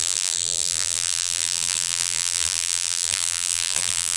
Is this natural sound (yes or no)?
no